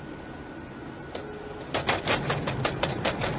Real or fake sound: real